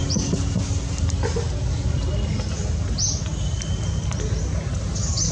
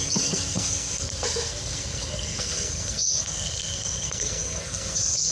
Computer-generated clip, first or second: second